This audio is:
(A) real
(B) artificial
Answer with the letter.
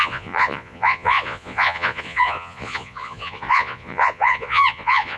B